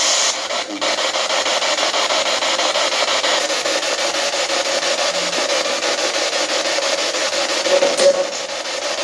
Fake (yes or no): no